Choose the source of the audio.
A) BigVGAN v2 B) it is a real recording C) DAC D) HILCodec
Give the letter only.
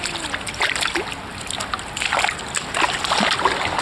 B